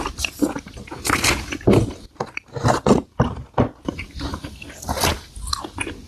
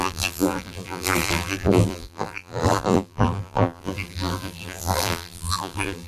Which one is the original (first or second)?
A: first